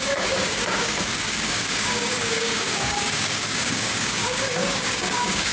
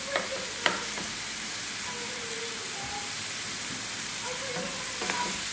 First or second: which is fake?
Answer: first